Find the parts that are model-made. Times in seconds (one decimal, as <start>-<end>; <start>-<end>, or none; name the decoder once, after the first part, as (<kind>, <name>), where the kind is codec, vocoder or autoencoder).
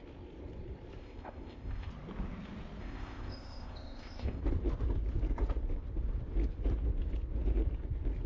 1.0-1.9 (codec, ZipCodec); 2.8-4.4